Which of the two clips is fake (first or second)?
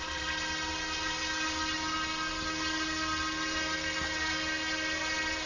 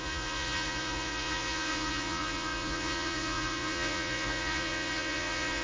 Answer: second